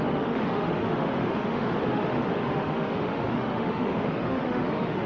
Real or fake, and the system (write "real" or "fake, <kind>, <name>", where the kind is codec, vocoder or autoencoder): fake, autoencoder, DAC-VAE